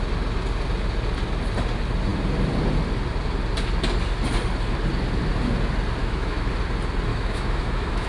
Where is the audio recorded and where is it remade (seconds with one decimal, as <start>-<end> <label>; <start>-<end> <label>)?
0.0-6.0 recorded; 6.0-6.5 remade; 6.5-7.1 recorded; 7.1-8.1 remade